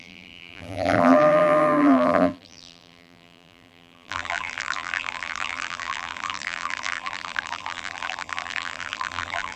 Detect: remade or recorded remade